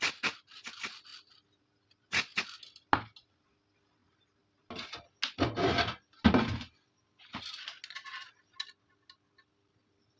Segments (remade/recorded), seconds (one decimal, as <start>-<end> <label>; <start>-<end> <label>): 0.0-10.2 recorded

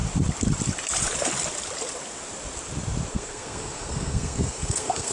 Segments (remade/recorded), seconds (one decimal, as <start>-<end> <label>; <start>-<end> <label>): 0.0-3.1 recorded; 3.1-5.1 remade

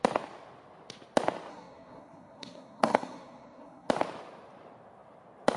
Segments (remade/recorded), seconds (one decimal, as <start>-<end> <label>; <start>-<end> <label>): 0.0-1.5 recorded; 1.5-3.9 remade; 3.9-5.6 recorded